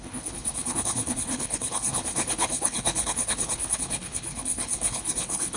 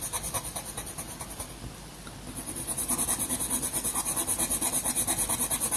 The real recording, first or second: second